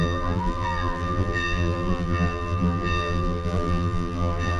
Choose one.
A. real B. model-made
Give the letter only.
B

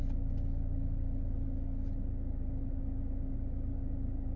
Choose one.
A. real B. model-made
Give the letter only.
A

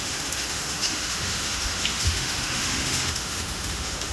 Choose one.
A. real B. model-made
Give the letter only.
B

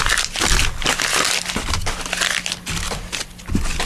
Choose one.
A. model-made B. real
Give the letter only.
B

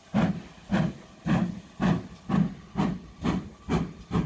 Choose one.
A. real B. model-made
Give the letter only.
A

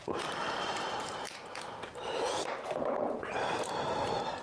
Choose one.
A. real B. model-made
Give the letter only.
B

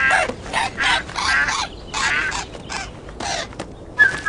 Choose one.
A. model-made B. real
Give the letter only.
B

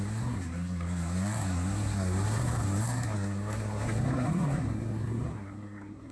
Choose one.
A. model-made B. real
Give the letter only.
A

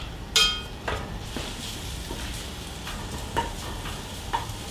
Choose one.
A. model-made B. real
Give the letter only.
B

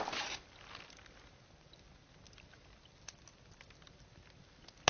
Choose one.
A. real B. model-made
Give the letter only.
A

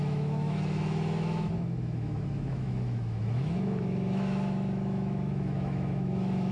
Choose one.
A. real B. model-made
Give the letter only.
B